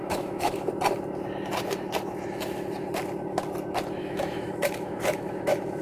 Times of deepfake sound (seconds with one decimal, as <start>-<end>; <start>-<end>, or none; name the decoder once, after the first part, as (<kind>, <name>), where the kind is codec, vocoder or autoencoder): 0.0-0.7 (autoencoder, DAC-VAE); 4.0-5.8